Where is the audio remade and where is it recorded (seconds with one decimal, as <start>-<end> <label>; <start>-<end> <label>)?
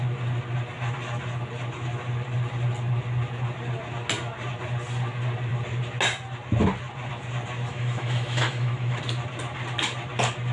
0.0-7.7 recorded; 7.7-9.0 remade; 9.0-10.5 recorded